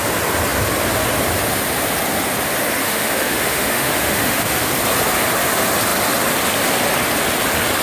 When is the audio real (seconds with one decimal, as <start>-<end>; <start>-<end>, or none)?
0.0-2.8; 4.7-7.8